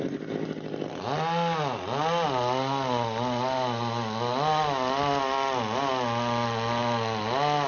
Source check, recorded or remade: recorded